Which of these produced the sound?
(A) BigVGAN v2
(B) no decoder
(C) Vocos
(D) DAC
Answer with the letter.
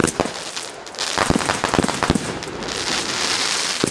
B